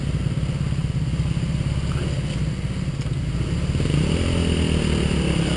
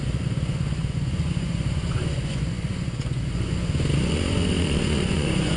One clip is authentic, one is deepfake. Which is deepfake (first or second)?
second